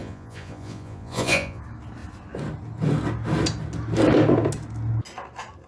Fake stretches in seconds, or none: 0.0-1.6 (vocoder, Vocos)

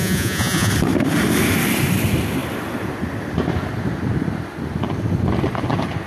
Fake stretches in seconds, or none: 0.0-0.7 (vocoder, Vocos)